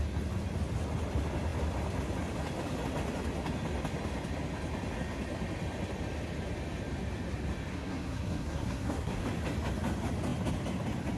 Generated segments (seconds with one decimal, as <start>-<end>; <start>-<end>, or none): 7.7-9.2